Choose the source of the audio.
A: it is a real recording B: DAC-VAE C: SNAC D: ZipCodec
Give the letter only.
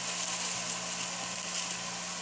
A